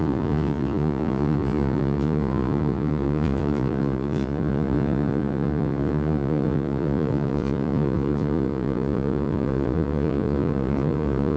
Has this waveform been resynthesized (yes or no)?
yes